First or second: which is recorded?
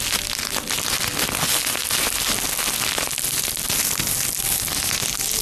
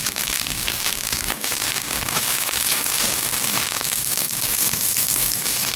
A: first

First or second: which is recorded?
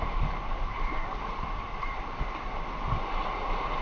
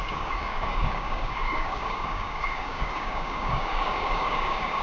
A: first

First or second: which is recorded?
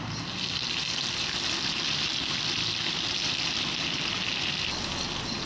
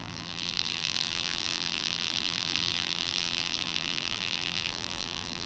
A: first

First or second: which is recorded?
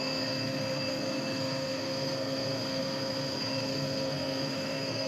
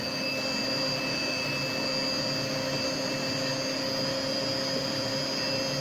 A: second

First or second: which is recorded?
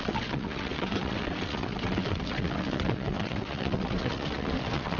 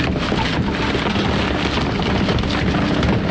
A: second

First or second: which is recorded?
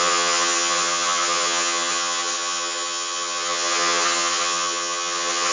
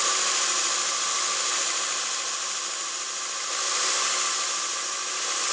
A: second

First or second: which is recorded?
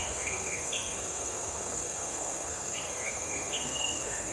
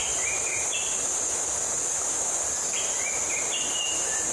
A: second